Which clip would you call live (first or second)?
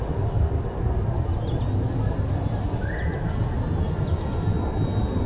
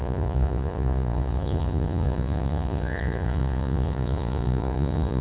first